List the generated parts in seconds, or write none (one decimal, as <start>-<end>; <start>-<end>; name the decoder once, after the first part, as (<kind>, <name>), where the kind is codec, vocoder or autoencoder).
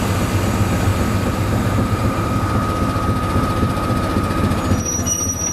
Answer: 0.9-2.3 (vocoder, BigVGAN v2); 3.2-5.5